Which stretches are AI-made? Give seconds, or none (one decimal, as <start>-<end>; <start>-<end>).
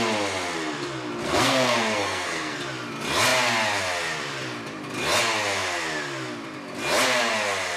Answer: 1.2-2.6